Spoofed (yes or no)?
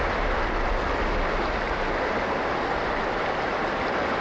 no